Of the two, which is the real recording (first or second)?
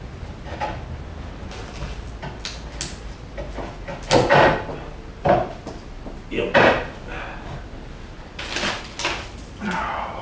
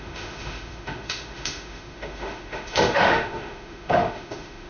first